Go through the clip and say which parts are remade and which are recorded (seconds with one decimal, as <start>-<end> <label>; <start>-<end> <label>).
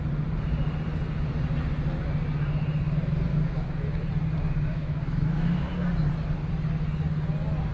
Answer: 0.0-3.3 recorded; 3.3-4.1 remade; 4.1-4.7 recorded; 4.7-5.7 remade; 5.7-7.7 recorded